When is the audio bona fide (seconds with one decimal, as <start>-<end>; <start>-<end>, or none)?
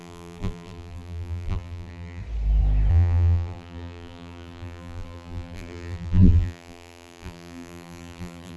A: 2.2-2.9